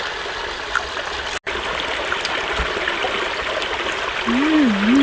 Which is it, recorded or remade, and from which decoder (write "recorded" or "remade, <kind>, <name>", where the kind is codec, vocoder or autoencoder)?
recorded